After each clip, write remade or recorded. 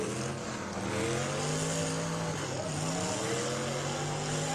recorded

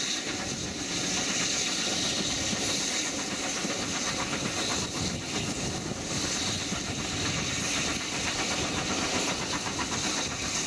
recorded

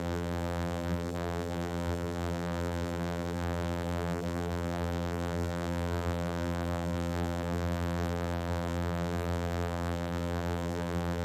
remade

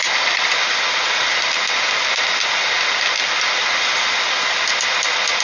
recorded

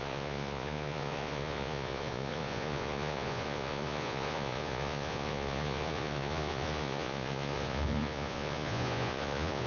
remade